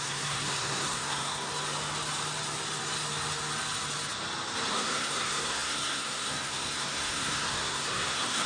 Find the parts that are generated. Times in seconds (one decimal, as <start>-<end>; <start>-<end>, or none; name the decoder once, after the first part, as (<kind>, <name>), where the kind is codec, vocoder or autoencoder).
0.0-1.5 (codec, SNAC); 4.7-8.5

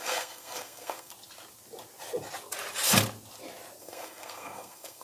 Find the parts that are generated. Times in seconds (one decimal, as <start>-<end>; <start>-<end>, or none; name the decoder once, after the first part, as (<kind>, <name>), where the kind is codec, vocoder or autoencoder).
0.0-1.1 (codec, SNAC); 3.8-5.0

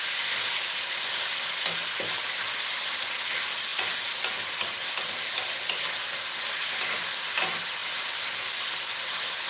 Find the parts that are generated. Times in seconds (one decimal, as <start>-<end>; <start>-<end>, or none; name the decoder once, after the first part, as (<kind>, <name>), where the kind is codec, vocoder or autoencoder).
none

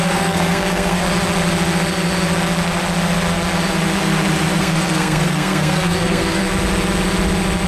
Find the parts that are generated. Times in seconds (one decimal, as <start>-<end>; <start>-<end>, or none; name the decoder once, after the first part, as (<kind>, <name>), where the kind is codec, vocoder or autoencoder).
0.0-1.0 (codec, SNAC); 4.6-6.4

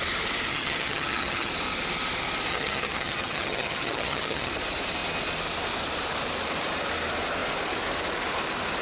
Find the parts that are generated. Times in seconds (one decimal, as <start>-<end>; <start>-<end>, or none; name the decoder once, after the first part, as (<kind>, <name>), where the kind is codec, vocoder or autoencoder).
0.5-1.5 (vocoder, HiFi-GAN); 2.5-4.5